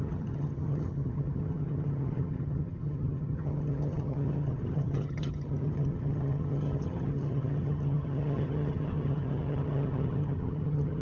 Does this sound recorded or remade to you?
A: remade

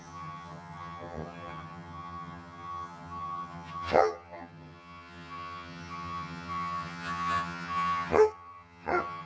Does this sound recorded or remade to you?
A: remade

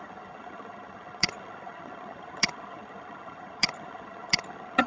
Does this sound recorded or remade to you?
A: remade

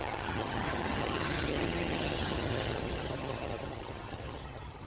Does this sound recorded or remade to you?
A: remade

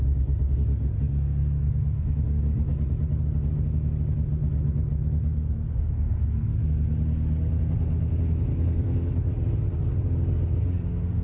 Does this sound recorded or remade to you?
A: recorded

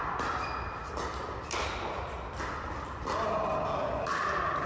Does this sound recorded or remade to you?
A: recorded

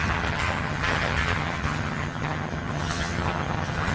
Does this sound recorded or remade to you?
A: remade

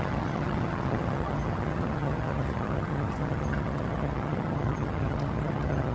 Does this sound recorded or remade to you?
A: remade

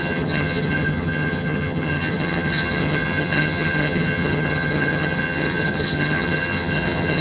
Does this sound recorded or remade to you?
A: remade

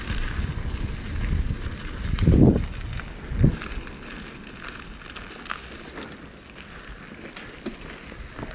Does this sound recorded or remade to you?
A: recorded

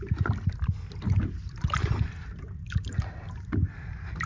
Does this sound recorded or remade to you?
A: recorded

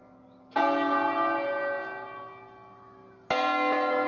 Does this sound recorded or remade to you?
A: recorded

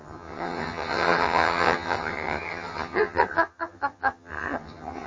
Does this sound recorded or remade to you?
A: remade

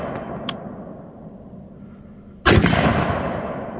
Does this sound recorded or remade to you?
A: recorded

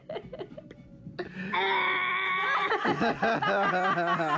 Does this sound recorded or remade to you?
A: recorded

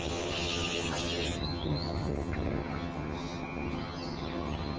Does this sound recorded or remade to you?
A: remade